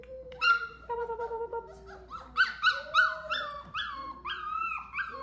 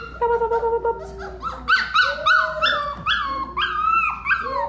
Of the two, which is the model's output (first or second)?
first